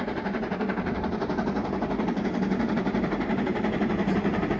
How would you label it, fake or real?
fake